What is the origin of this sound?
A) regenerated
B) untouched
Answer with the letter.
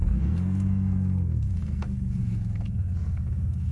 A